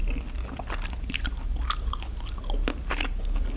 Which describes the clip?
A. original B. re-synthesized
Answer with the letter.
A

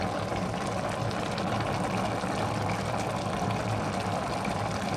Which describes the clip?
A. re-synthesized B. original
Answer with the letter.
B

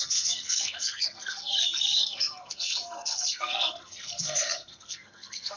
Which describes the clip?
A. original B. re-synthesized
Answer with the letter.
B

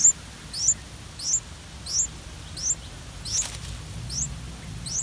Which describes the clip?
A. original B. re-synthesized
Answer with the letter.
A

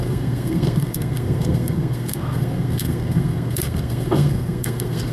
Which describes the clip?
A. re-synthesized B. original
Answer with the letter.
A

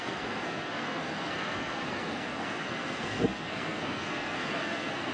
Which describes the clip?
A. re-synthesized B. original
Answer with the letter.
A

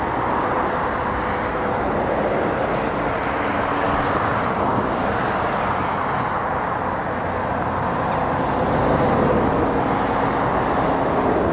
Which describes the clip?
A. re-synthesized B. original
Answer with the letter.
B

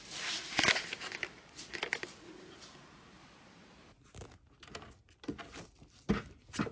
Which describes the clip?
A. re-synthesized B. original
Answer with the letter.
B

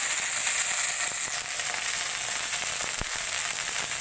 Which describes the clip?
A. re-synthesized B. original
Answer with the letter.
B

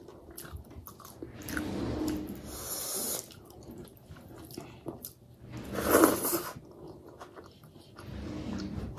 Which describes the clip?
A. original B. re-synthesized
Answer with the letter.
A